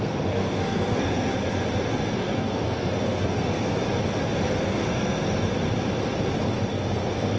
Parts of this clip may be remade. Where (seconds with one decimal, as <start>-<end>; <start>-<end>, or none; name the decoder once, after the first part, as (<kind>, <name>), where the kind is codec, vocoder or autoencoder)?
0.0-1.3 (codec, SNAC); 1.9-3.7; 4.6-5.5; 6.7-7.4